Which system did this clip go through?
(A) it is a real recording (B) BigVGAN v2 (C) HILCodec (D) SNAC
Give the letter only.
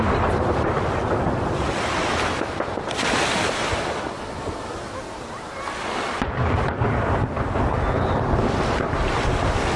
A